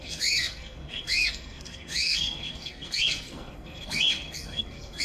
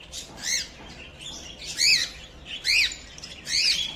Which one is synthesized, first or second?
first